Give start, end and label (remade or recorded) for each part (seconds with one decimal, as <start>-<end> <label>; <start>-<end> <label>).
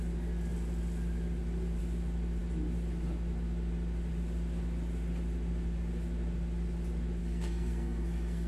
0.0-7.2 recorded; 7.2-8.5 remade